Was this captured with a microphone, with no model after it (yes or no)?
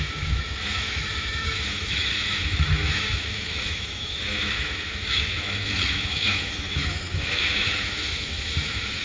no